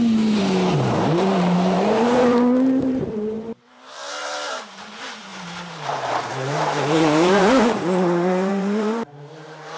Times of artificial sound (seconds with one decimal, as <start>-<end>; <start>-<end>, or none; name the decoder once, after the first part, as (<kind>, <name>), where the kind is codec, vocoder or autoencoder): 0.0-9.8 (vocoder, BigVGAN v2)